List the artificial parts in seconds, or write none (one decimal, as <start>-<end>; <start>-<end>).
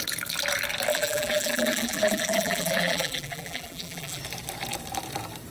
0.9-4.2